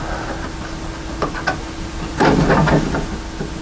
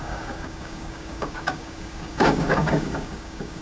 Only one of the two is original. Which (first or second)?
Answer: first